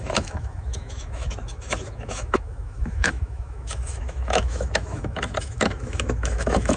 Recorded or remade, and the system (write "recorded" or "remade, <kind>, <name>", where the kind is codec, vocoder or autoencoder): remade, autoencoder, DAC-VAE